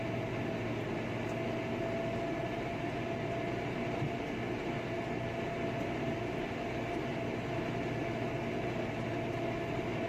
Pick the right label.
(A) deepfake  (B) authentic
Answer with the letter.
B